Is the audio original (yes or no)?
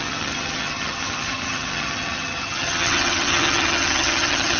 no